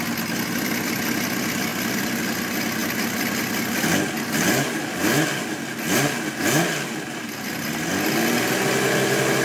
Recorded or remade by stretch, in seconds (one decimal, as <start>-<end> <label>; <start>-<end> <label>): 0.0-9.4 recorded